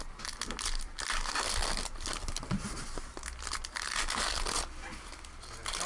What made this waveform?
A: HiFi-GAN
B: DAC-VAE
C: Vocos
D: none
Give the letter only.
D